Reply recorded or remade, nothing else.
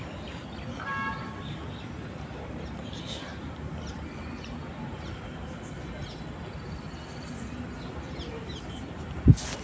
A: recorded